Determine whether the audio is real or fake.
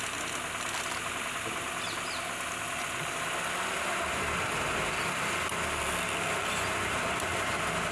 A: real